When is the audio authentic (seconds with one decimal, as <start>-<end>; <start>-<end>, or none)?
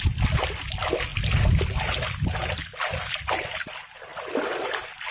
0.0-5.1